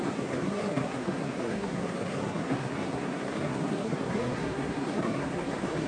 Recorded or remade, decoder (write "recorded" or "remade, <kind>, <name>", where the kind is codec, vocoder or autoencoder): remade, codec, SNAC